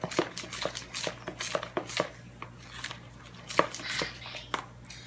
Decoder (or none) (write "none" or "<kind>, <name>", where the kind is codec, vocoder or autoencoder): none